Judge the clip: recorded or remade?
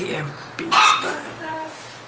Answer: recorded